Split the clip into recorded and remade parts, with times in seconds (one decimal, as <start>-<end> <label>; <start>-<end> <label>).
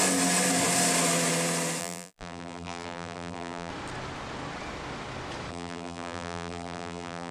0.0-1.8 recorded; 1.8-3.7 remade; 3.7-5.5 recorded; 5.5-7.3 remade